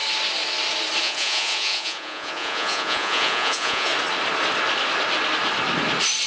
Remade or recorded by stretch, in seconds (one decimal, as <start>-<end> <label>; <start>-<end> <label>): 0.0-1.0 recorded; 1.0-3.9 remade; 3.9-6.3 recorded